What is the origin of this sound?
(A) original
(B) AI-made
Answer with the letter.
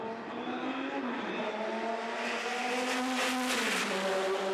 A